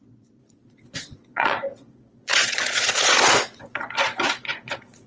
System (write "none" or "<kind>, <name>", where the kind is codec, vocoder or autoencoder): vocoder, Vocos